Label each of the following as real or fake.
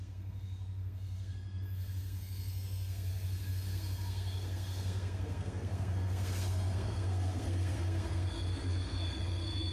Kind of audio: fake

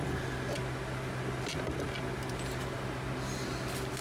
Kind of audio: real